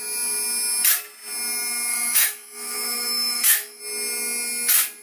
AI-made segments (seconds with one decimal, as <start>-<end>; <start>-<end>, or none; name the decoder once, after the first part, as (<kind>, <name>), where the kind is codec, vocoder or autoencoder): 1.9-3.8 (autoencoder, DAC-VAE)